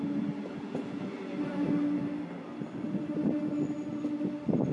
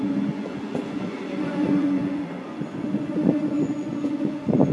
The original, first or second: first